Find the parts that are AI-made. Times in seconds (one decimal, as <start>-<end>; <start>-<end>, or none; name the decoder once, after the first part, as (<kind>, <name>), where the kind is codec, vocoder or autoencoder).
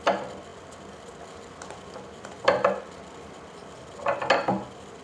none